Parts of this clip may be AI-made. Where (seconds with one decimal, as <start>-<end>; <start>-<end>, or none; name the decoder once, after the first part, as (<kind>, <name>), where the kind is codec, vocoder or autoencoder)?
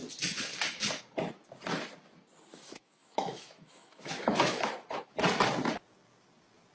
2.5-4.7 (autoencoder, DAC-VAE)